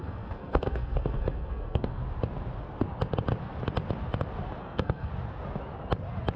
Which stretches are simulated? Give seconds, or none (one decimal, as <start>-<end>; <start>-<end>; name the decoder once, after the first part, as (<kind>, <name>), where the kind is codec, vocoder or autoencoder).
0.0-2.0 (codec, SNAC); 4.6-5.1